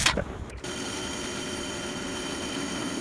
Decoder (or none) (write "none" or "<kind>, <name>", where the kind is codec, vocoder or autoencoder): vocoder, BigVGAN v2